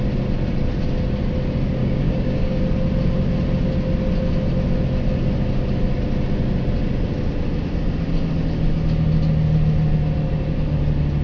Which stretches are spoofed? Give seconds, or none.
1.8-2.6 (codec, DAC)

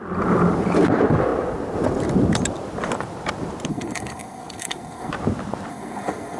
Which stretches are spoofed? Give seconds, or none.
3.7-5.1 (codec, SNAC); 5.7-6.4

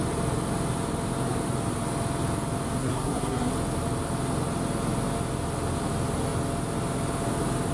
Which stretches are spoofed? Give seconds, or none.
2.8-3.5 (codec, SNAC)

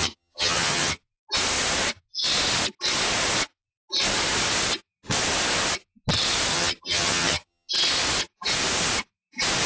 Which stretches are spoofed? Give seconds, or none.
0.0-1.0 (vocoder, HiFi-GAN); 6.5-7.7